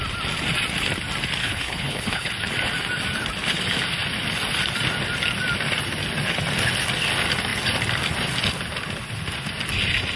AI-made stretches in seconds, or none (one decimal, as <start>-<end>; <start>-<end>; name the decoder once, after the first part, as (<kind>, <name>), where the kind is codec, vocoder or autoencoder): 1.4-2.3 (codec, HILCodec)